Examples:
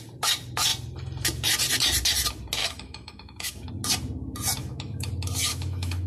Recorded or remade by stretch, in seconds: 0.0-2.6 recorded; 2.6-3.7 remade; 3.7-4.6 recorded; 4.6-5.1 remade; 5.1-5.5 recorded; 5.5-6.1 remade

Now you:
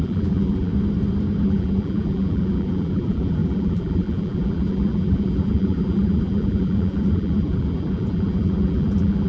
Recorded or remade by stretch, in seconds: 0.0-0.7 remade; 0.7-1.4 recorded; 1.4-9.3 remade

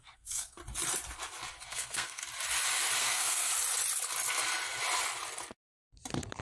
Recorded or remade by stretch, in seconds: 0.0-0.6 remade; 0.6-1.6 recorded; 1.6-2.2 remade; 2.2-3.0 recorded; 3.0-3.5 remade; 3.5-6.4 recorded